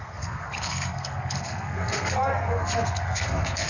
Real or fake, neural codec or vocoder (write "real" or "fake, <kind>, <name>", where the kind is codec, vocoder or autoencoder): fake, codec, SNAC